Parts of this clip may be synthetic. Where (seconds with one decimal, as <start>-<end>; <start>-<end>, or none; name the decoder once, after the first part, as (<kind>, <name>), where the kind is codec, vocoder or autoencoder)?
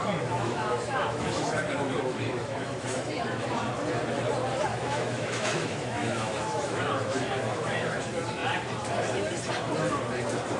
0.0-3.5 (autoencoder, DAC-VAE); 4.7-8.0